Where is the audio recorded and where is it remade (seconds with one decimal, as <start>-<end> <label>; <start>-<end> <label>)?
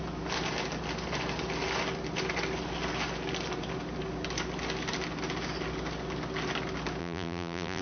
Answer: 0.0-7.0 recorded; 7.0-7.8 remade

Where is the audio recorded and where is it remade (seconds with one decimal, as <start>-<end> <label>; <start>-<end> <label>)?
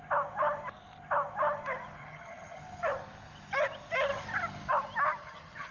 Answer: 0.0-2.0 recorded; 2.0-2.6 remade; 2.6-5.2 recorded; 5.2-5.7 remade